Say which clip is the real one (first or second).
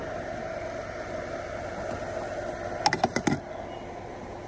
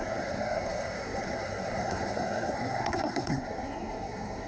first